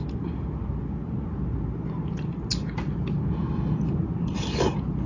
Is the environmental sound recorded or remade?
recorded